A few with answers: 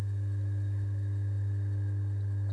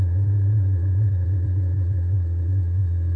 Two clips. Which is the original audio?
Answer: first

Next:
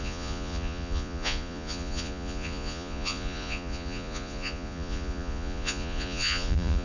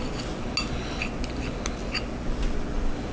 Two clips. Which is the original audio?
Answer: second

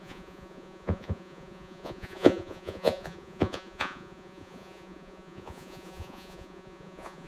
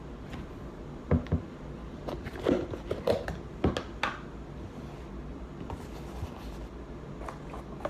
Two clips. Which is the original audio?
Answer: second